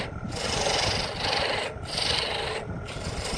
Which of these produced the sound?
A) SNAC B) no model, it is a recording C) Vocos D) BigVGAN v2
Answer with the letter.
B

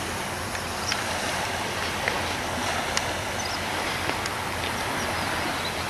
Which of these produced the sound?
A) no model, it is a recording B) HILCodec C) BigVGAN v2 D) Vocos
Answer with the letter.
A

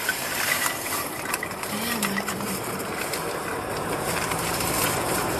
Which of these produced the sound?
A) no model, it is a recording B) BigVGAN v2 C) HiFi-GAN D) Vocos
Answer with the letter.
B